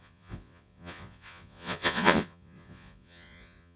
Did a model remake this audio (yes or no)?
yes